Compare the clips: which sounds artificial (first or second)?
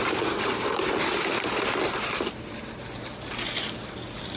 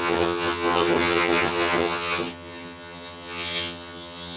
second